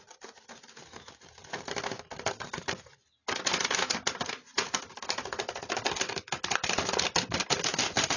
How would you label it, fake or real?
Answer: real